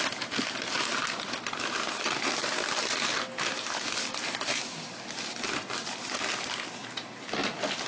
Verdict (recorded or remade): recorded